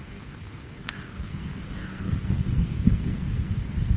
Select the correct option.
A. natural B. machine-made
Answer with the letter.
B